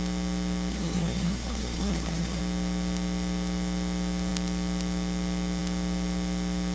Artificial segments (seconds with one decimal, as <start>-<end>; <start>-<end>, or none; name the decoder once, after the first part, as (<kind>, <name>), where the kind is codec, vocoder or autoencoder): 0.7-2.4 (codec, SNAC)